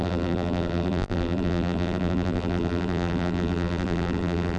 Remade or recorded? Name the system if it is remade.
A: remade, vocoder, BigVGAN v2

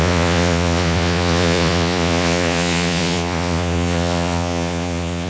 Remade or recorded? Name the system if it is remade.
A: remade, vocoder, Vocos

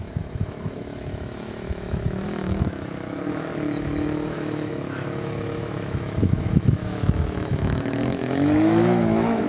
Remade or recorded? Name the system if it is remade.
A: remade, autoencoder, DAC-VAE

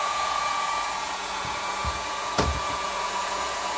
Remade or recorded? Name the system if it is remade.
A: remade, vocoder, Vocos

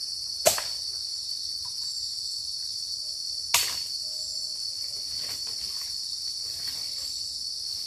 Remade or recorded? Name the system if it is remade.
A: recorded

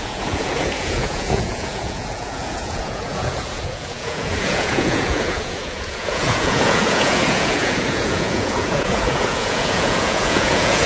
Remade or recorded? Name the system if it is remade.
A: remade, vocoder, Vocos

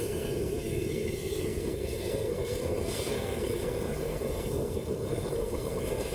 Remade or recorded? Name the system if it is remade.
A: remade, codec, SNAC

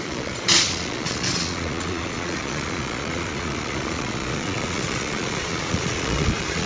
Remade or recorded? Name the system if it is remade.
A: remade, vocoder, Vocos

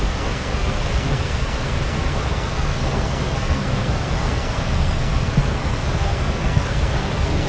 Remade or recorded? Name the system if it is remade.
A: remade, codec, SNAC